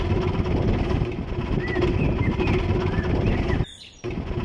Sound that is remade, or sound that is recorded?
recorded